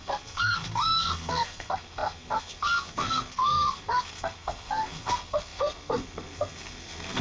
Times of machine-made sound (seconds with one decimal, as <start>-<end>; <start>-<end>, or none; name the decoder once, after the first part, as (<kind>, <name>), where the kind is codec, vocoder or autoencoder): 0.0-7.2 (codec, SNAC)